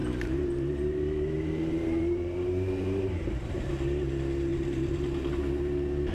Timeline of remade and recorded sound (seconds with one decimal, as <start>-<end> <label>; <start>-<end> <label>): 0.0-3.7 remade; 3.7-4.5 recorded; 4.5-5.3 remade; 5.3-6.1 recorded